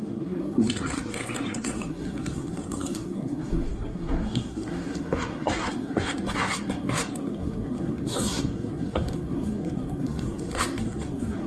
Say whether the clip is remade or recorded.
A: remade